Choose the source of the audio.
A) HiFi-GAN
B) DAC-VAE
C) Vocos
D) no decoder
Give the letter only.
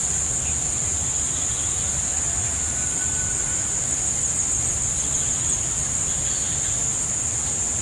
D